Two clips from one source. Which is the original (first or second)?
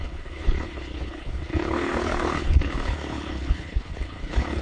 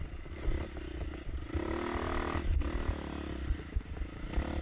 second